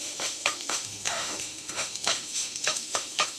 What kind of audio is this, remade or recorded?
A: remade